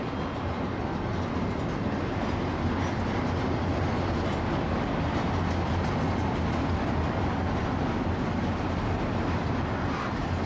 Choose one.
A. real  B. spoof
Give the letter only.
A